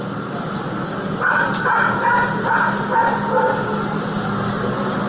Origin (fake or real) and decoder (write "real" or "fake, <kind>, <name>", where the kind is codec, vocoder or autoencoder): real